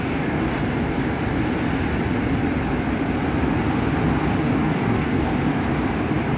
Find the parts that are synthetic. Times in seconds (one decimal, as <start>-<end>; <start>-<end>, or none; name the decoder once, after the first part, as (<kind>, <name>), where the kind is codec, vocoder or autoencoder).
0.0-0.6 (codec, DAC); 4.4-5.3